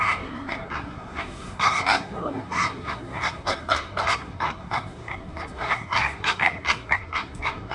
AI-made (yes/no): yes